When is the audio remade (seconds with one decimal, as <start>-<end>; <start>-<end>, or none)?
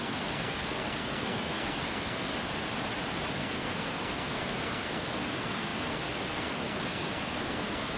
0.0-2.3; 3.3-8.0